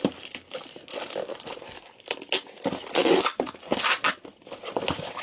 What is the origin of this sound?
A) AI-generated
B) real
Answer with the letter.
B